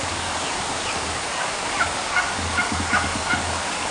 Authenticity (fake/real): fake